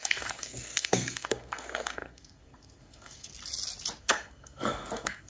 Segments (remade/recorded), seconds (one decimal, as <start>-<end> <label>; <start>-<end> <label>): 0.0-3.3 remade; 3.3-4.0 recorded; 4.0-5.3 remade